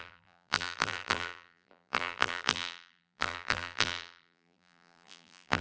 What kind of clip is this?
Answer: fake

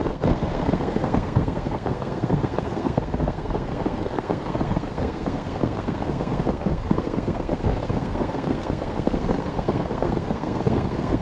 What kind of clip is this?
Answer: fake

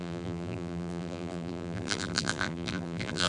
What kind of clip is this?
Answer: fake